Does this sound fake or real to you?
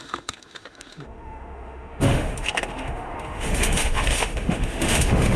fake